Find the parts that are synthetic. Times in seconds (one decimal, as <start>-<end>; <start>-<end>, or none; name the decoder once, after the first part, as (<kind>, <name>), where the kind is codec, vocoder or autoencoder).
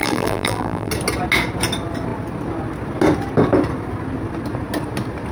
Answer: 0.0-0.9 (vocoder, BigVGAN v2)